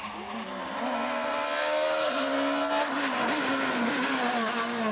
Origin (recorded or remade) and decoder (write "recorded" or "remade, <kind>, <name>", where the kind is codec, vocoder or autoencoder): recorded